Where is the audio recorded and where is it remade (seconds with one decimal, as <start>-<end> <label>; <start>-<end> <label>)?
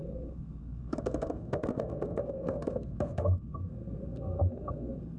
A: 0.0-5.2 remade